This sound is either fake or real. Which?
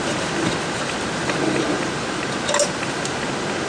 real